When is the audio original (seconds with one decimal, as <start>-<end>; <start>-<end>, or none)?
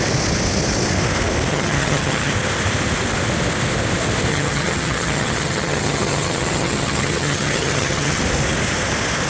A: 0.0-1.5; 2.3-4.3; 8.2-9.3